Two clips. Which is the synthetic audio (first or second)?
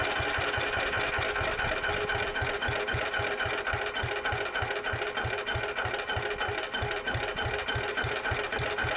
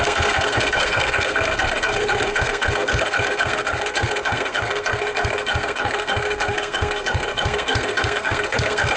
second